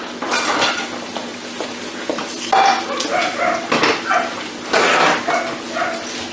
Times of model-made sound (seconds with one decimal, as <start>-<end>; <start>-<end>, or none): none